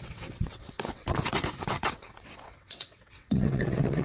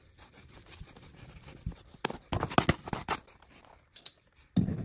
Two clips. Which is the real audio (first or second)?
second